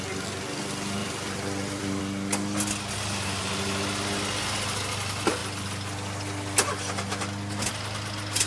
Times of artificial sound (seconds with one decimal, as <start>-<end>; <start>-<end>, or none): 1.0-2.0